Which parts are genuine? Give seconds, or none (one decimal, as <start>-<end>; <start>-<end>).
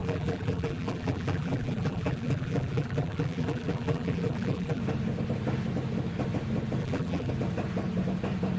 4.8-6.8; 7.3-8.6